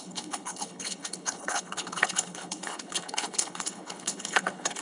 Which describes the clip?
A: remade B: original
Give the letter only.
A